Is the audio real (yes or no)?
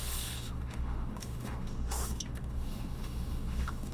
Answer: no